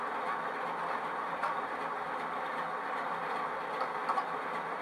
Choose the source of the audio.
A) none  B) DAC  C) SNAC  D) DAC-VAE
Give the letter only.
A